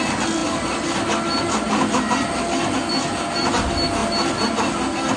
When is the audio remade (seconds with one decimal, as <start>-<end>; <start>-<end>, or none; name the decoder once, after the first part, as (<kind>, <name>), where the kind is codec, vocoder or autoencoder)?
none